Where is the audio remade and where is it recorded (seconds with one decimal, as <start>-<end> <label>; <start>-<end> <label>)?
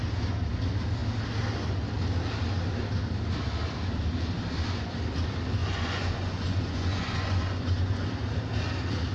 0.0-5.6 recorded; 5.6-8.1 remade; 8.1-9.1 recorded